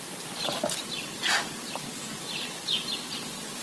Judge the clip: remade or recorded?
recorded